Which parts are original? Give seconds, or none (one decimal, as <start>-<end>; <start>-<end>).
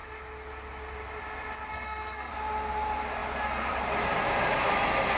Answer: 0.0-1.7; 2.3-5.2